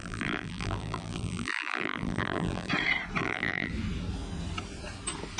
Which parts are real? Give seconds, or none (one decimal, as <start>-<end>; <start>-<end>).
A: 2.7-3.2; 3.7-5.4